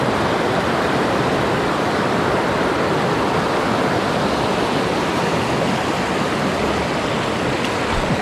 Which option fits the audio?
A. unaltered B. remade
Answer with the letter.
A